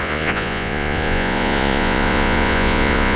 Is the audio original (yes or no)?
no